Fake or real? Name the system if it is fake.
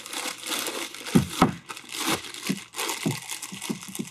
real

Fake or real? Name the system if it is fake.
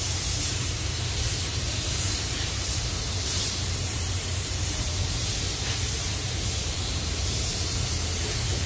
fake, vocoder, BigVGAN v2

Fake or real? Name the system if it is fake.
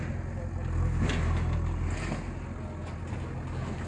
real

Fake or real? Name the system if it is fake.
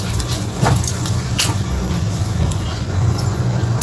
fake, vocoder, Vocos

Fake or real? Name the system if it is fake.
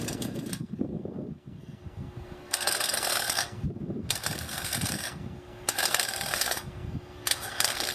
fake, codec, SNAC